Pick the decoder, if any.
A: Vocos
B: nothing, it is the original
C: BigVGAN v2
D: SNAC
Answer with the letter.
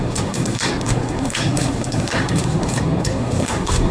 D